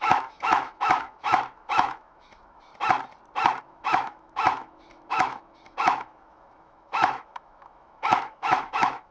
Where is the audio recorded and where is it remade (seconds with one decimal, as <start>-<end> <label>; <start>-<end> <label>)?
0.0-2.7 remade; 2.7-3.6 recorded; 3.6-9.1 remade